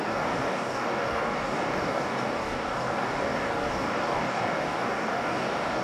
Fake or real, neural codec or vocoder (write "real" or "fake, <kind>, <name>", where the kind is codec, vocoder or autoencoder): fake, codec, DAC